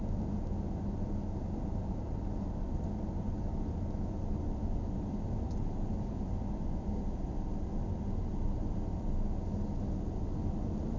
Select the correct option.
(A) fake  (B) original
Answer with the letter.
B